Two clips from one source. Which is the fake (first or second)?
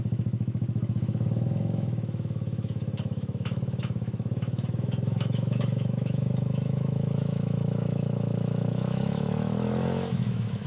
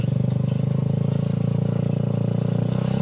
first